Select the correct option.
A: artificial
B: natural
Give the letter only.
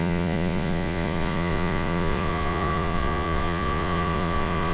A